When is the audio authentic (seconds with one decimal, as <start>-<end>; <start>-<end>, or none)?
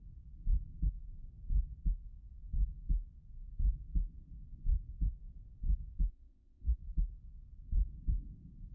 0.0-6.1; 6.8-8.7